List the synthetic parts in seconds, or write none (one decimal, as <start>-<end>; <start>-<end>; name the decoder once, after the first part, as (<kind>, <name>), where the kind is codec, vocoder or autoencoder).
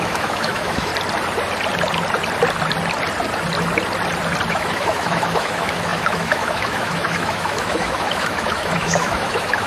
0.0-0.9 (autoencoder, DAC-VAE); 4.5-9.7